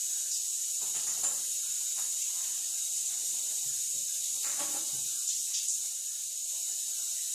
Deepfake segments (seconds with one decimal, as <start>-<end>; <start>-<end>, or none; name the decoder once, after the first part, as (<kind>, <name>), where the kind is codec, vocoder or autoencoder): 2.2-6.5 (vocoder, BigVGAN v2)